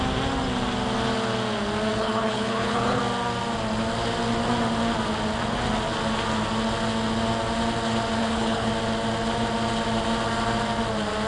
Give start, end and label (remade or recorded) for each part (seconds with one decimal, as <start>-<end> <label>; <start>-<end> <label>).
0.0-1.9 recorded; 1.9-3.0 remade; 3.0-8.2 recorded; 8.2-8.7 remade; 8.7-11.3 recorded